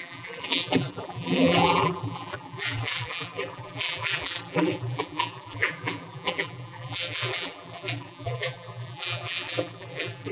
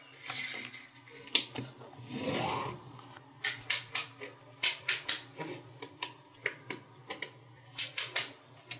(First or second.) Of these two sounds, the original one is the second